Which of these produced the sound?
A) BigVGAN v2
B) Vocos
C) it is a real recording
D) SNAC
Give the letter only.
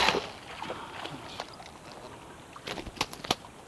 C